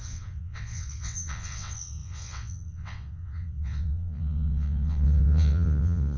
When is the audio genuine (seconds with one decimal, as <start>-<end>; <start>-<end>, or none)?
none